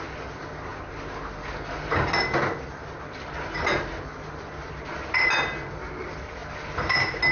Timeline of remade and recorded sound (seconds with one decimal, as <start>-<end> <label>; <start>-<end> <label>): 0.0-7.3 recorded